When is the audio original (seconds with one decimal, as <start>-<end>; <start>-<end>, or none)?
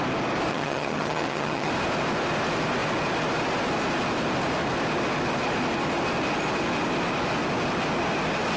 0.0-0.5; 1.7-8.6